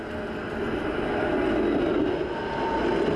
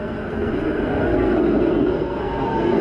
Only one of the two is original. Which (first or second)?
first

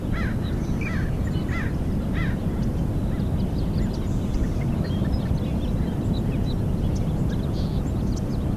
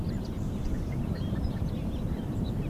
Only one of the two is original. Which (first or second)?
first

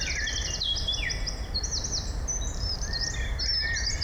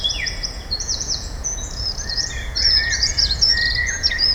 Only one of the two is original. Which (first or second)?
first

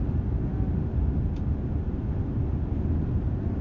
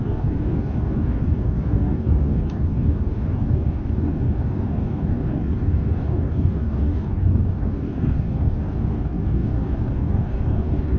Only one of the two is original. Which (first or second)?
first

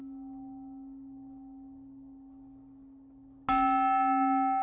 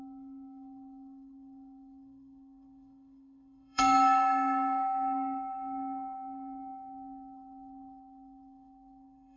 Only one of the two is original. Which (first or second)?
first